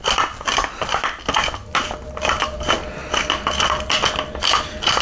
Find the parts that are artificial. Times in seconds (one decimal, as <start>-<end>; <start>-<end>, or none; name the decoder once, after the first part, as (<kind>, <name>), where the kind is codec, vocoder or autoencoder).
none